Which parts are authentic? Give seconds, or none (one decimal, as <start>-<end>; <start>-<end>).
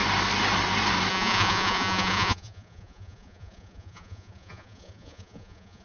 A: 0.0-1.1